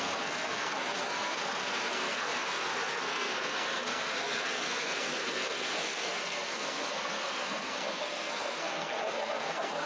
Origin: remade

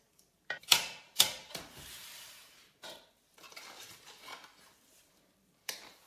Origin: remade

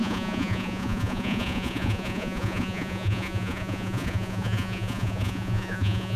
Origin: remade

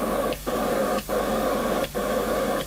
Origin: remade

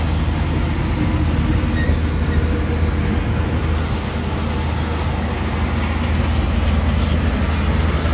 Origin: recorded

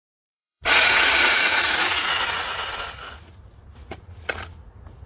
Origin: remade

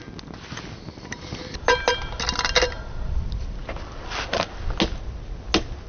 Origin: recorded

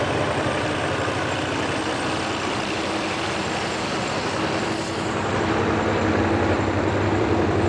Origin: remade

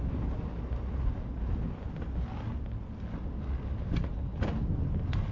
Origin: recorded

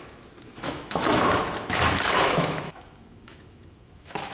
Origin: remade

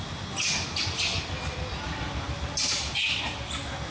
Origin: recorded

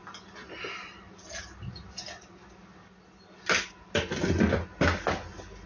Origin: recorded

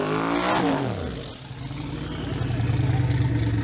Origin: recorded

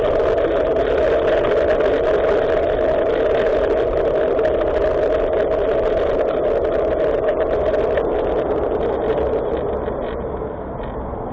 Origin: recorded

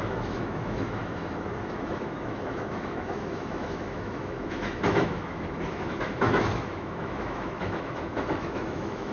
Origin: remade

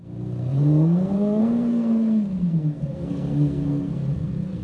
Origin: remade